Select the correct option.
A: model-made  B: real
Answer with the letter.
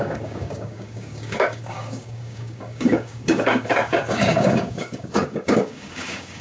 A